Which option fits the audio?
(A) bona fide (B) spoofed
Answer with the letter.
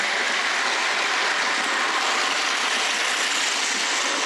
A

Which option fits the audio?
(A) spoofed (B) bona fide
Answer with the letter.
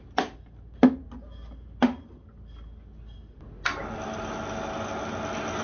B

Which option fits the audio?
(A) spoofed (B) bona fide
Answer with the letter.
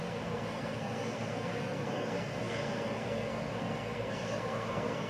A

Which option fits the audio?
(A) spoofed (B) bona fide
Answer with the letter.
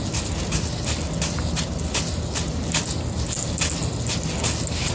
B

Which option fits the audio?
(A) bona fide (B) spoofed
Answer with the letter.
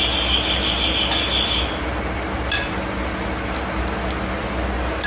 A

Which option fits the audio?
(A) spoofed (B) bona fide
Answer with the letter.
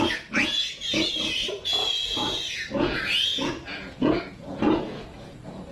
A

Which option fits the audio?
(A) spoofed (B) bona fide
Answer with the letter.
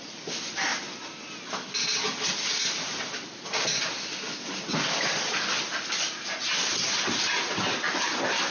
B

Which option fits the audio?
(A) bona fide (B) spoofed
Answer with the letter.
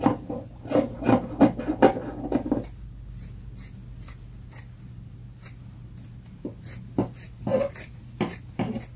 A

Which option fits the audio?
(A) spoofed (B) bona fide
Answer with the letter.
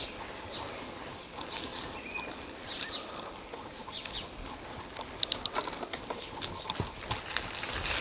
B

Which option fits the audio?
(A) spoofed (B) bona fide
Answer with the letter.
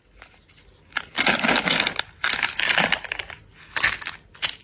B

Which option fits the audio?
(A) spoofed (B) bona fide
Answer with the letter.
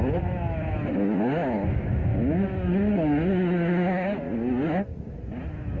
B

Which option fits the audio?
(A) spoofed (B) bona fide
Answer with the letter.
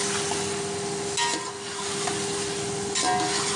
B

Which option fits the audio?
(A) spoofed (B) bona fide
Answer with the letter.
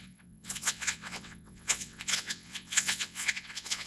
A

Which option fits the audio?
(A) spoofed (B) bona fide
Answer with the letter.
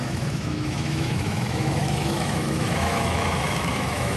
A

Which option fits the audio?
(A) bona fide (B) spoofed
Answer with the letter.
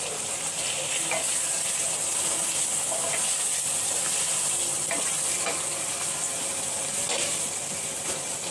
A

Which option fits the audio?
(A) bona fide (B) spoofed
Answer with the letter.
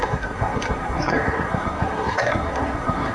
B